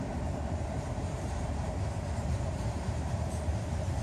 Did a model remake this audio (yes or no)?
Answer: yes